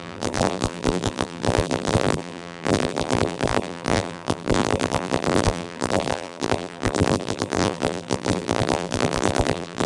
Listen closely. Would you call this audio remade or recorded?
remade